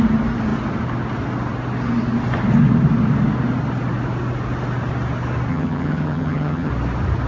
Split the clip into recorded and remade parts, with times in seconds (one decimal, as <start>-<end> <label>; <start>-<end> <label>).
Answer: 0.0-5.5 recorded; 5.5-6.7 remade; 6.7-7.3 recorded